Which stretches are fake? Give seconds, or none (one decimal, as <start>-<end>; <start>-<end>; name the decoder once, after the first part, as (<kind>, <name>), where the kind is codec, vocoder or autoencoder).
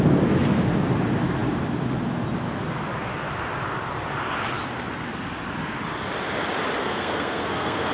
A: 6.8-7.9 (codec, SNAC)